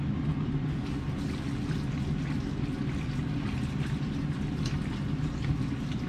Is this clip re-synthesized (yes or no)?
no